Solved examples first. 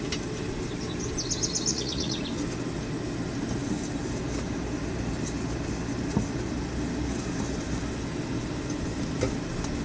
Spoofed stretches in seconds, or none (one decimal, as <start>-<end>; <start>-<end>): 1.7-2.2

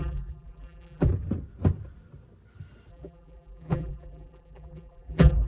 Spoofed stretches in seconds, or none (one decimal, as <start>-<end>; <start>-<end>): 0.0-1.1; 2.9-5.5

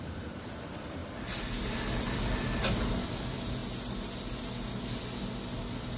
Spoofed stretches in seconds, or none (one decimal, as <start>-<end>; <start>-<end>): 0.0-3.6

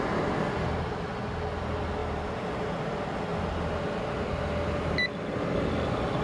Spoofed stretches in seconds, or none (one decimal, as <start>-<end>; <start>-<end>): 2.0-2.8